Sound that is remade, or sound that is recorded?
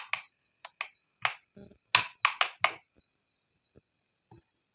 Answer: recorded